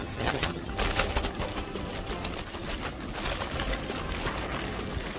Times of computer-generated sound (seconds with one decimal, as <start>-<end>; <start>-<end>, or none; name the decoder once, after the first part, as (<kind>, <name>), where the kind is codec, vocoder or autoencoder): 0.0-0.7 (vocoder, HiFi-GAN)